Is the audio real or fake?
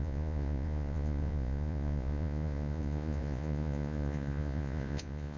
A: fake